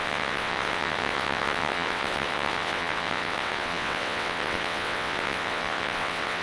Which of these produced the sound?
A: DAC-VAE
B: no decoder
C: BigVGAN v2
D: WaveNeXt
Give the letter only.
D